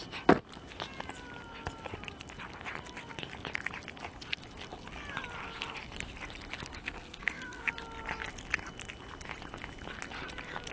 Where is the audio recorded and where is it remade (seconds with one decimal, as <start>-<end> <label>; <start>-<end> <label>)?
0.0-6.8 recorded; 6.8-7.7 remade; 7.7-10.7 recorded